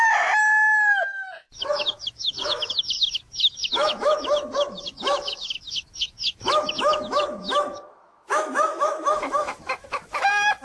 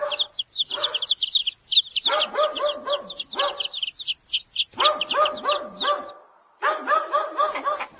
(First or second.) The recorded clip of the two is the second